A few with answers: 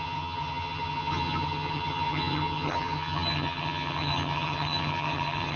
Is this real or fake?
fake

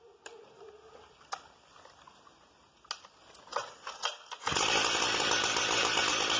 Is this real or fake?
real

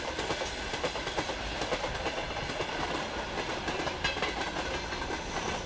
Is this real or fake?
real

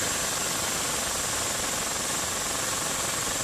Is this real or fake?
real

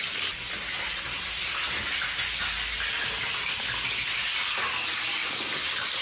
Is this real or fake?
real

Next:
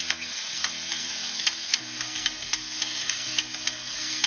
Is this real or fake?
fake